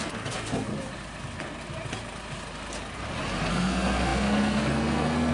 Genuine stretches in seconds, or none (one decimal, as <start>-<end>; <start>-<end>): 0.7-3.5